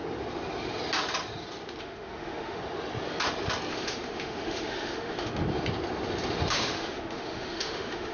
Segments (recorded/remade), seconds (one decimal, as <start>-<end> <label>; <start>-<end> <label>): 0.0-1.8 recorded; 1.8-2.6 remade; 2.6-3.7 recorded; 3.7-5.4 remade; 5.4-6.5 recorded; 6.5-8.1 remade